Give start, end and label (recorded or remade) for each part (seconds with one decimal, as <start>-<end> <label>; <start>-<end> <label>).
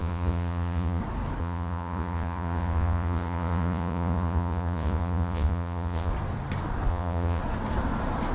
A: 0.0-1.0 remade; 1.0-1.4 recorded; 1.4-6.1 remade; 6.1-6.9 recorded; 6.9-7.4 remade; 7.4-8.3 recorded